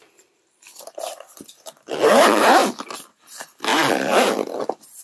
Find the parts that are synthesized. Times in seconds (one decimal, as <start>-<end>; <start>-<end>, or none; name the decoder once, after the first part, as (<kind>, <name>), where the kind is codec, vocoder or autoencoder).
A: 0.0-2.6 (vocoder, BigVGAN v2); 3.2-3.7; 4.6-5.0